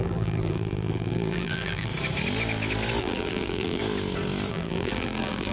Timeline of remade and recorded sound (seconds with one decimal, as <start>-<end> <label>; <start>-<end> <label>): 0.0-1.9 remade; 1.9-3.0 recorded; 3.0-3.8 remade; 3.8-4.5 recorded; 4.5-5.5 remade